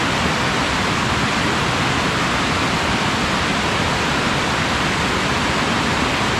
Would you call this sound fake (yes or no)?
no